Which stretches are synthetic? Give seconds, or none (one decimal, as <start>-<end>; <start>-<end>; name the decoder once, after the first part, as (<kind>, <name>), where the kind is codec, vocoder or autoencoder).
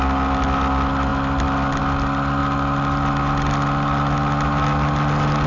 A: none